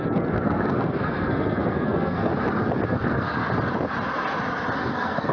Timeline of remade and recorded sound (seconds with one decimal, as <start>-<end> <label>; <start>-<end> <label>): 0.0-2.3 remade; 2.3-2.9 recorded; 2.9-3.4 remade; 3.4-4.8 recorded; 4.8-5.3 remade